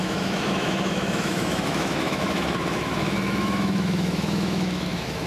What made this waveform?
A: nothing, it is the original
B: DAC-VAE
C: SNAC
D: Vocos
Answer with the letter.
B